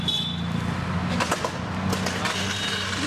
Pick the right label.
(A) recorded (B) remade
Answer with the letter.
A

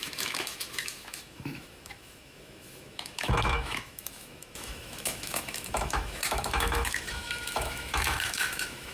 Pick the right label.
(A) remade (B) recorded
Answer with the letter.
A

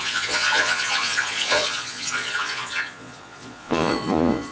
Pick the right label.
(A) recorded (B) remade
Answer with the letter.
B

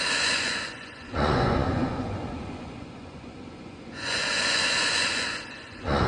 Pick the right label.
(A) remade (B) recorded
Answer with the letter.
A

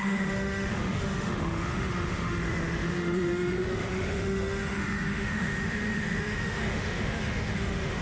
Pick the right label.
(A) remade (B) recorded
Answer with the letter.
A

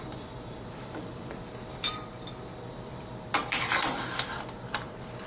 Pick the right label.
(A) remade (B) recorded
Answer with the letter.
A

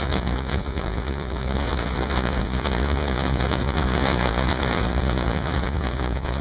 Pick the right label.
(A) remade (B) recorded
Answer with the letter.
A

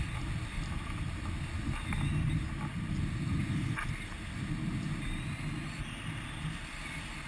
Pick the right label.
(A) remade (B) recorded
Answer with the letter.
B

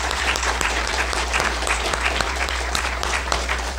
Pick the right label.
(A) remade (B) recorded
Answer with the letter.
A